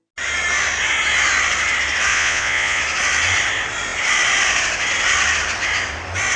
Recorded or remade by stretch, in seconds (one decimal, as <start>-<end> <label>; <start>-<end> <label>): 0.0-2.1 recorded; 2.1-2.8 remade; 2.8-6.4 recorded